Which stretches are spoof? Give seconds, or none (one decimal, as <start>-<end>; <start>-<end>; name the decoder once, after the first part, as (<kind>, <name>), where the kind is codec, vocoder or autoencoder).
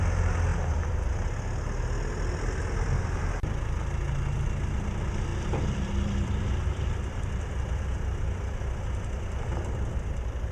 5.3-7.8 (vocoder, BigVGAN v2)